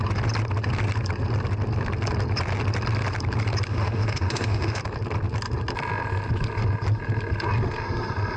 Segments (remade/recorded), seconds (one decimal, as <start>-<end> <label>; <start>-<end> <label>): 0.0-3.7 recorded; 3.7-4.8 remade; 4.8-8.4 recorded